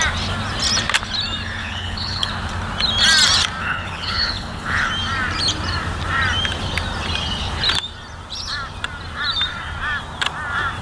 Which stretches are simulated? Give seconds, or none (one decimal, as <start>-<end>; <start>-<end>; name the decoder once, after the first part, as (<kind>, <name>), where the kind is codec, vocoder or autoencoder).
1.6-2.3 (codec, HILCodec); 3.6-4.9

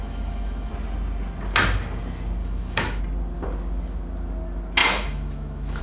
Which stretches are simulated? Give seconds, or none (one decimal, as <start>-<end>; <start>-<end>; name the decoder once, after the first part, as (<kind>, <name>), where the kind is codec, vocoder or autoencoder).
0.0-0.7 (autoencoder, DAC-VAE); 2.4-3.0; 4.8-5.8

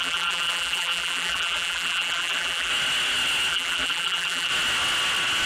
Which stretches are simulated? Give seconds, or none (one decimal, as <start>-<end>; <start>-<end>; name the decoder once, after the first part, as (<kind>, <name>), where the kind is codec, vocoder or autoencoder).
0.0-2.7 (vocoder, BigVGAN v2); 3.5-4.5